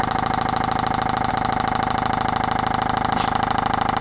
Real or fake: real